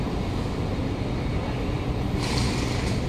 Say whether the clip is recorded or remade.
recorded